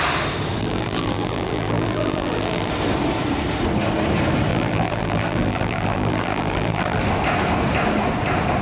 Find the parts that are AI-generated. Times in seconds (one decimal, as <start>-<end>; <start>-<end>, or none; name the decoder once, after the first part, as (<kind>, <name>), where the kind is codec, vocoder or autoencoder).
0.6-2.7 (vocoder, BigVGAN v2); 4.5-7.0